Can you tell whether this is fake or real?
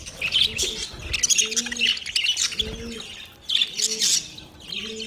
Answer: real